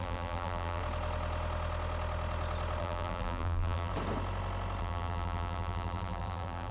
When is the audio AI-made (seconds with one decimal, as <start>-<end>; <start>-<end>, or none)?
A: 0.0-0.8; 2.8-3.9; 4.8-6.7